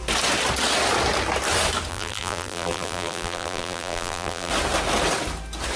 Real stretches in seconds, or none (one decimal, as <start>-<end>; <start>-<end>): 0.0-1.9; 4.5-5.8